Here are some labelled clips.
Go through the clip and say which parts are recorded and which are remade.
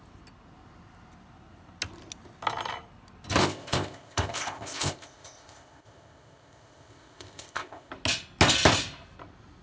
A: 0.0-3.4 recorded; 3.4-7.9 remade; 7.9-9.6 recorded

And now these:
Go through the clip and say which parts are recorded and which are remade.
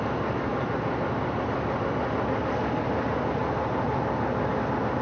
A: 0.0-5.0 recorded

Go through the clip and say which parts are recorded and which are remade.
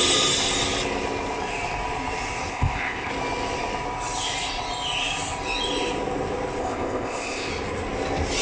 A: 0.0-2.5 recorded; 2.5-3.1 remade; 3.1-6.6 recorded; 6.6-7.5 remade; 7.5-8.4 recorded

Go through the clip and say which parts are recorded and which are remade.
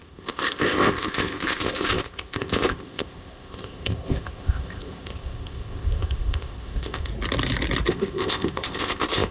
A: 0.0-7.1 remade; 7.1-7.9 recorded; 7.9-9.3 remade